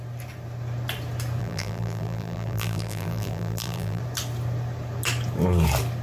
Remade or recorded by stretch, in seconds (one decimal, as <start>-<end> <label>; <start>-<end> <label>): 0.0-1.4 recorded; 1.4-4.0 remade; 4.0-6.0 recorded